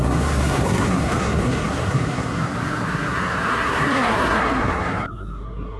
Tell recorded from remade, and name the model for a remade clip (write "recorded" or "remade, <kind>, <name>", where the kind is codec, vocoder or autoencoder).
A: remade, codec, SNAC